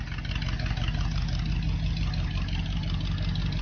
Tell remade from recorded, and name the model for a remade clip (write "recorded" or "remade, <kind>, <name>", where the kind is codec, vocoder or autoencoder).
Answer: recorded